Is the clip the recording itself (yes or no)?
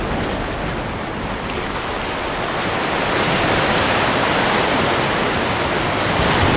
yes